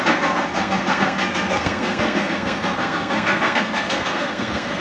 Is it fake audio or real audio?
fake